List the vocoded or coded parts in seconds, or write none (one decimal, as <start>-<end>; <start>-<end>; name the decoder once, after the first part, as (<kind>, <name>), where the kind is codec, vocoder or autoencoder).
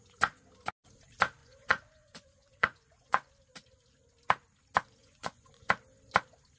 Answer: 1.4-3.3 (vocoder, Vocos); 5.0-5.7